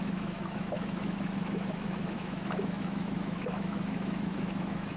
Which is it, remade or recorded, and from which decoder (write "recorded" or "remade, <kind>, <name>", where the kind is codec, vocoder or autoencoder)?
remade, autoencoder, DAC-VAE